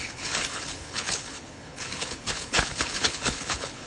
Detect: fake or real fake